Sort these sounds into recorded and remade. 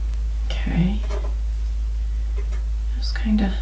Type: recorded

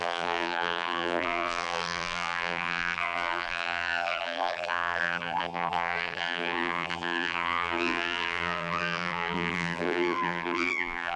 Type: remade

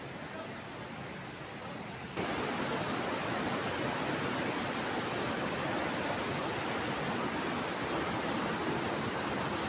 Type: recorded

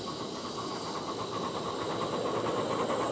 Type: recorded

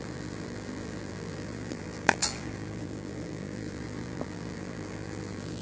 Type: remade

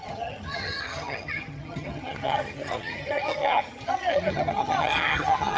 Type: remade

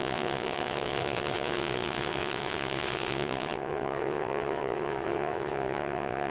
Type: remade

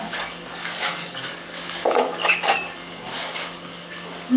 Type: remade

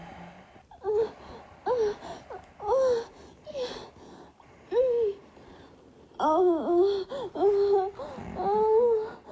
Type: recorded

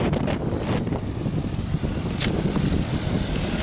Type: recorded